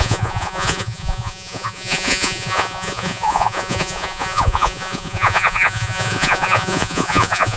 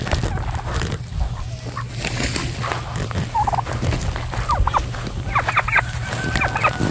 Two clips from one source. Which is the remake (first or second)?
first